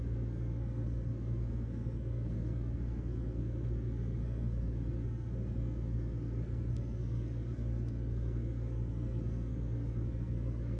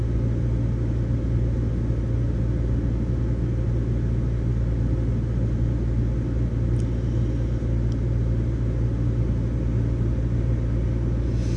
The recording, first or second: second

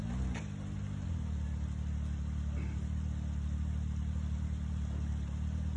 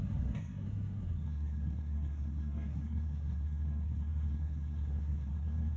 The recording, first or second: first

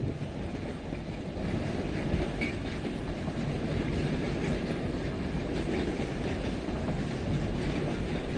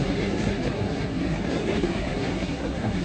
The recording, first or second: first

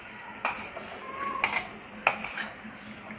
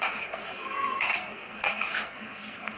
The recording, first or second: first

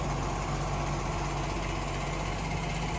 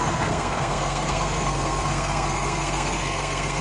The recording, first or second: first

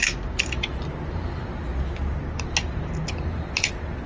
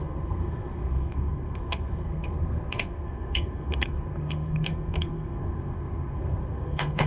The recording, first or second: first